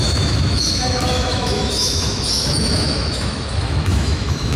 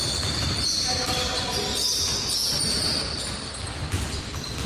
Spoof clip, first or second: first